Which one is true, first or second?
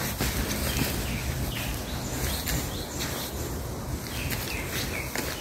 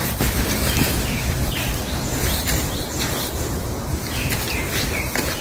first